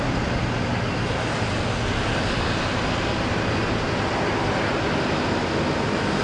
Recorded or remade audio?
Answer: recorded